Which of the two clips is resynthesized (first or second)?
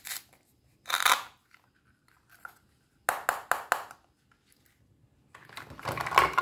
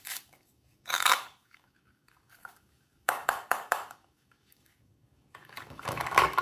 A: second